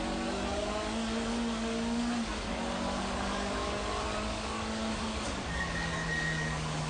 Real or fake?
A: fake